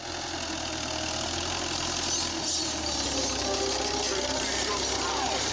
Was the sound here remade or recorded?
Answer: recorded